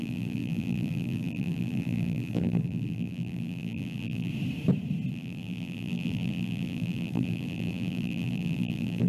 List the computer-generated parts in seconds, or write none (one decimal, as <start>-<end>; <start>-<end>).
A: 0.0-4.3; 5.1-9.1